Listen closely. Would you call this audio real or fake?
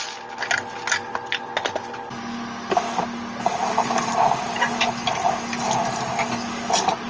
real